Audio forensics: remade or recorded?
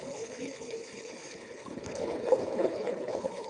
remade